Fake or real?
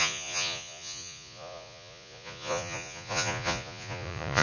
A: fake